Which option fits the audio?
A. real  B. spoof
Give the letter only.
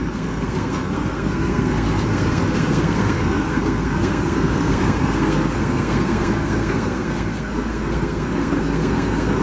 B